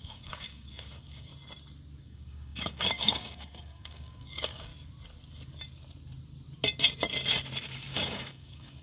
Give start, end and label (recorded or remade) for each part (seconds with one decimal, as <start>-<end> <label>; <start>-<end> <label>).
0.0-1.3 remade; 1.3-2.0 recorded; 2.0-4.7 remade; 4.7-7.9 recorded; 7.9-8.8 remade